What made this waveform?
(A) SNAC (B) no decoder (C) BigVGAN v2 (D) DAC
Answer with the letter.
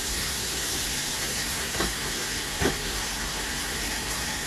A